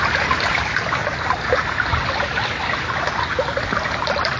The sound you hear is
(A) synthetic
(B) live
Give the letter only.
B